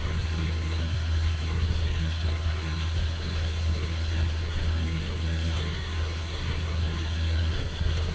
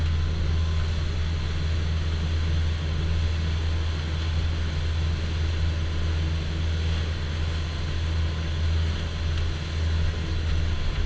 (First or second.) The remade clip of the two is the first